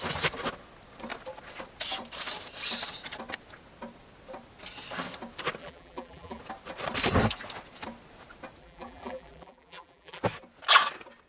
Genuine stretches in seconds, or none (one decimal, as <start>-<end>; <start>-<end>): 0.0-5.6; 6.4-8.6; 10.2-11.3

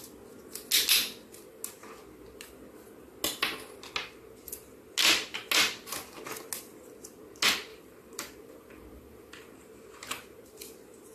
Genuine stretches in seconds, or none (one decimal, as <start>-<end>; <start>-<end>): 0.0-7.7; 9.5-10.0; 10.6-11.1

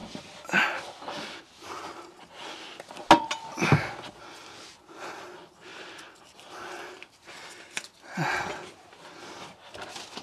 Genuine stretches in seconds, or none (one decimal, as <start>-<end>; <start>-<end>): 1.4-5.7; 6.8-10.2

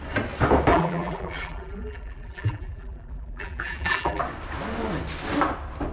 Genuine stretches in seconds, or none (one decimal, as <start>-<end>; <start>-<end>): 0.0-0.7; 4.2-5.9